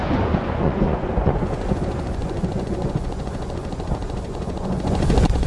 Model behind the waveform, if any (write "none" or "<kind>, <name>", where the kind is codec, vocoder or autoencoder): vocoder, Vocos